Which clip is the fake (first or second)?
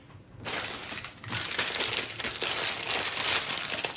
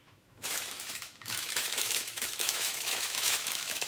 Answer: second